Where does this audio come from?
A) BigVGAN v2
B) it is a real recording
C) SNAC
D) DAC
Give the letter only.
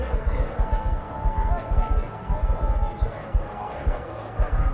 C